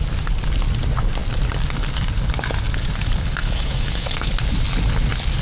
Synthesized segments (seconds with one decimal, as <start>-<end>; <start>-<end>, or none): 3.4-4.3